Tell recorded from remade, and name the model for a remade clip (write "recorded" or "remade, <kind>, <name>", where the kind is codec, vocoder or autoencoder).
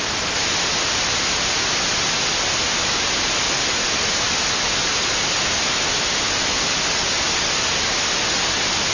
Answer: recorded